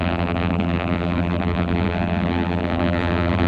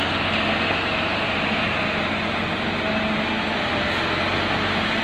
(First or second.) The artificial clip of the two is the first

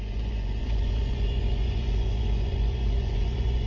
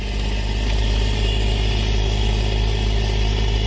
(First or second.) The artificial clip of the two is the first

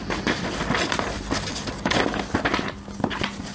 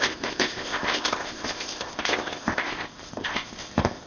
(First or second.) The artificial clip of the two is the second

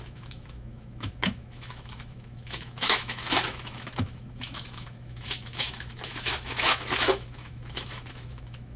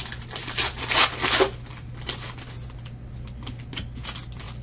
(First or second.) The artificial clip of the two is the first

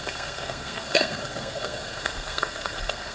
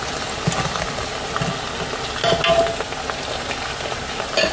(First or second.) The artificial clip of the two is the first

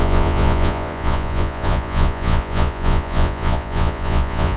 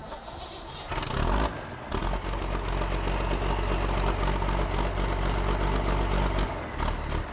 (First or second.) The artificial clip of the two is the first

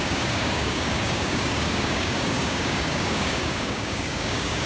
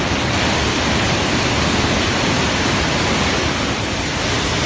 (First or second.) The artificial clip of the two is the first